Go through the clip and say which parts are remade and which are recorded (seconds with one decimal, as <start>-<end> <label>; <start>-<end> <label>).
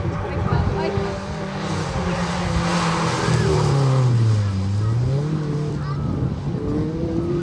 0.0-7.4 recorded